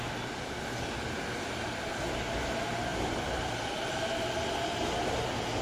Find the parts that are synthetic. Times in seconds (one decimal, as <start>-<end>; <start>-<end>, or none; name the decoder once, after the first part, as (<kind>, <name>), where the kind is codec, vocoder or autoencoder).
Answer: 2.9-4.1 (vocoder, BigVGAN v2)